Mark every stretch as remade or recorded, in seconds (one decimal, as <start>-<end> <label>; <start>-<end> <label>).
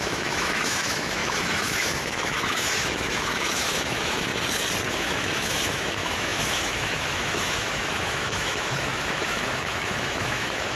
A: 0.0-4.3 remade; 4.3-4.9 recorded; 4.9-10.8 remade